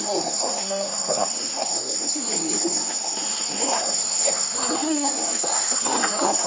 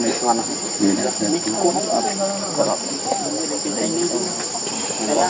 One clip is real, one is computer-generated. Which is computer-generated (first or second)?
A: first